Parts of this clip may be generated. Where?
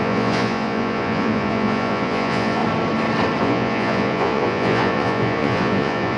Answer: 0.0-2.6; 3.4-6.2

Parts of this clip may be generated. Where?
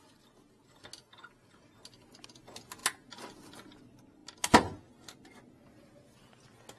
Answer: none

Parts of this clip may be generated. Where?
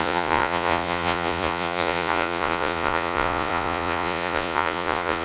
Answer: 0.0-5.2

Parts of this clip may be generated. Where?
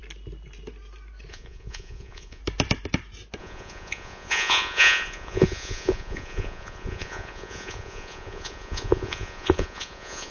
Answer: 1.3-2.4; 3.4-10.3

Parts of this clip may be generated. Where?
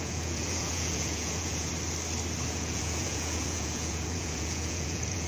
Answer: 0.0-1.7; 2.5-5.3